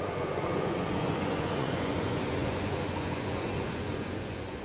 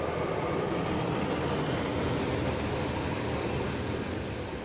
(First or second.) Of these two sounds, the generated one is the first